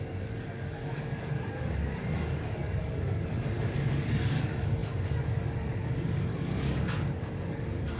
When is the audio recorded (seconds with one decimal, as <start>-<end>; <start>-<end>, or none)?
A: none